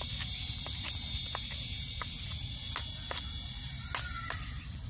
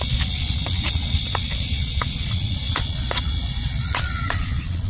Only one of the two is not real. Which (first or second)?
second